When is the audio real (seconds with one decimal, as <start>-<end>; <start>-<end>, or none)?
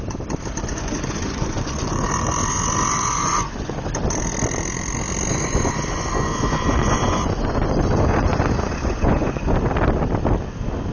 0.0-0.7; 3.9-5.3; 9.5-10.9